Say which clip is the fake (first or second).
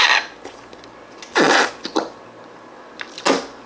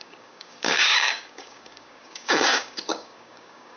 second